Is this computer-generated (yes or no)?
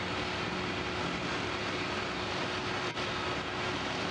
no